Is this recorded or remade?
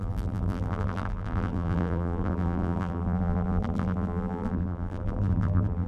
remade